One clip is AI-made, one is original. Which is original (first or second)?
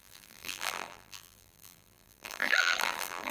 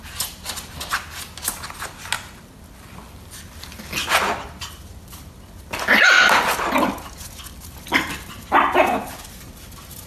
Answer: second